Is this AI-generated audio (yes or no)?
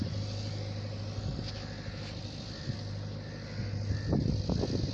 no